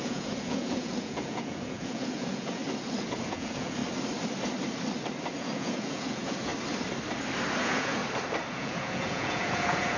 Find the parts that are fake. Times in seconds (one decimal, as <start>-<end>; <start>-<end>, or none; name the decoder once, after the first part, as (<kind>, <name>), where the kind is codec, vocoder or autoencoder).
0.0-2.6 (vocoder, Vocos); 3.1-3.8; 5.4-6.5; 7.6-8.0; 8.5-10.0